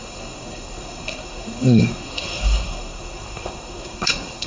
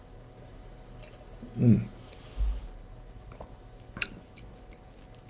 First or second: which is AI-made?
first